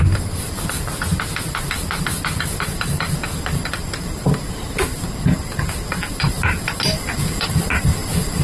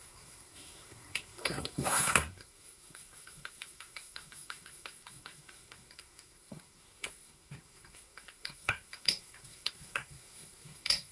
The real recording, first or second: first